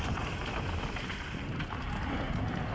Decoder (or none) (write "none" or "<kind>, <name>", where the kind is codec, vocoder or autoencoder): none